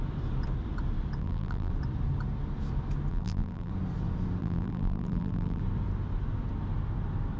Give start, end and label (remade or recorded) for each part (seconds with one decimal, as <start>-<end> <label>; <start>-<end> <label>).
0.0-1.2 recorded; 1.2-1.7 remade; 1.7-3.1 recorded; 3.1-3.7 remade; 3.7-4.4 recorded; 4.4-5.6 remade; 5.6-7.4 recorded